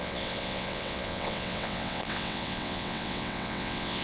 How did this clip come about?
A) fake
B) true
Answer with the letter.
A